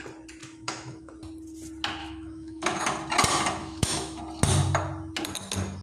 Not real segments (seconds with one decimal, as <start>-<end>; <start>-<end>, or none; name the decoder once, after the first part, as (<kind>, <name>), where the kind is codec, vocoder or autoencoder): 0.4-1.1 (autoencoder, DAC-VAE); 2.0-2.8; 3.6-4.2